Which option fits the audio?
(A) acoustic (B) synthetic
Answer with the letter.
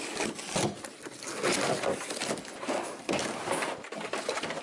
A